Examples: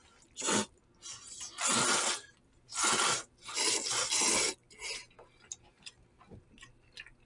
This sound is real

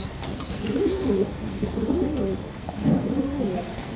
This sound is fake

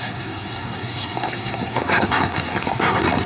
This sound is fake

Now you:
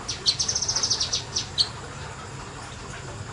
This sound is real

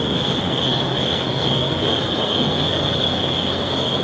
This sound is fake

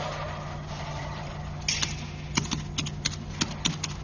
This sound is real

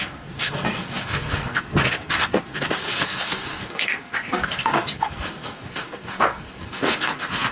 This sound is fake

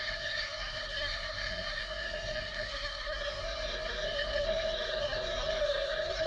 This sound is fake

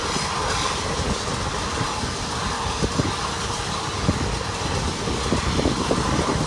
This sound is real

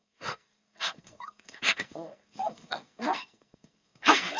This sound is fake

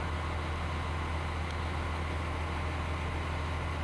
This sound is real